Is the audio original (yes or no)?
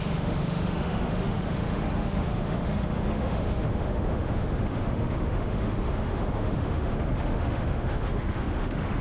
no